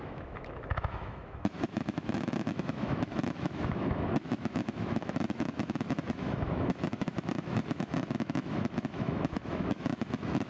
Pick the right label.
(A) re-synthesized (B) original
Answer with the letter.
A